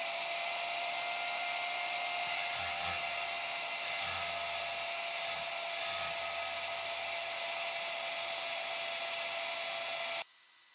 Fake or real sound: real